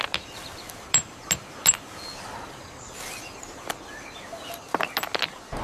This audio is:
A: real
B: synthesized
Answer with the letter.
A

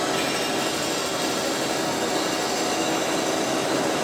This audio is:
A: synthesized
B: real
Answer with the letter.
B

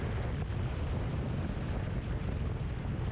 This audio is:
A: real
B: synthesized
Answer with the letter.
A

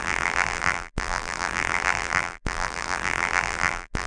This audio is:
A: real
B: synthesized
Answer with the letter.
B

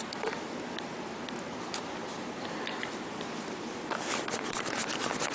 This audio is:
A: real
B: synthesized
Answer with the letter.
A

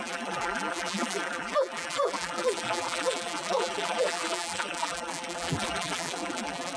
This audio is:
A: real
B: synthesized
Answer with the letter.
B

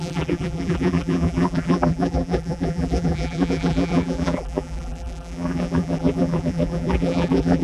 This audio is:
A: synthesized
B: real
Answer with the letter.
A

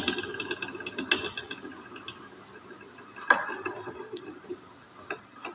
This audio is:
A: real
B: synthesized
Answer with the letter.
A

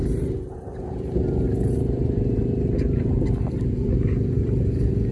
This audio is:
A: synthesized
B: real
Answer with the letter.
A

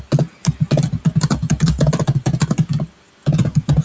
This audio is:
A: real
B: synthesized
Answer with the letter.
A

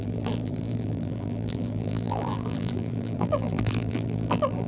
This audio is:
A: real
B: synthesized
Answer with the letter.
B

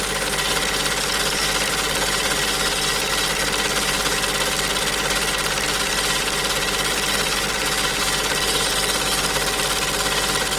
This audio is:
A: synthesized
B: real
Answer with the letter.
B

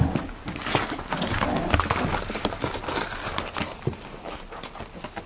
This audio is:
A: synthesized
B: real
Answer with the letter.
B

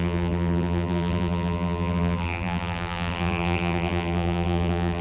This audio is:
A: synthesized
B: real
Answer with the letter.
A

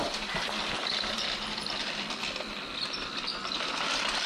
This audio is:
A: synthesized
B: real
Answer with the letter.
A